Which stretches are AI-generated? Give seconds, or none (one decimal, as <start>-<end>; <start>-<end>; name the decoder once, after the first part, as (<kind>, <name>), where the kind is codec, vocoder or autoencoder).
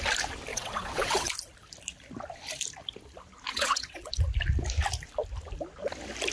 0.5-1.3 (vocoder, WaveNeXt); 3.5-4.1